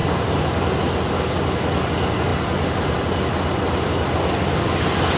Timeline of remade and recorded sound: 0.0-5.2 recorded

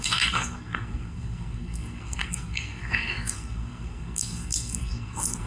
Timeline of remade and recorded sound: 0.0-5.5 remade

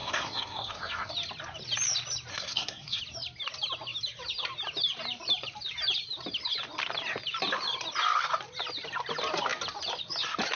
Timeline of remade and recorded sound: 0.0-1.1 remade; 1.1-2.3 recorded; 2.3-3.0 remade; 3.0-10.6 recorded

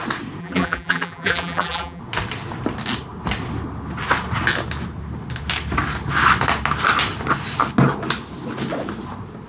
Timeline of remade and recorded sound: 0.0-0.4 recorded; 0.4-2.0 remade; 2.0-9.5 recorded

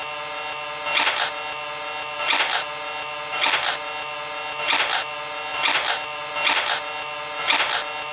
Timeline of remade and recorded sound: 0.0-8.1 recorded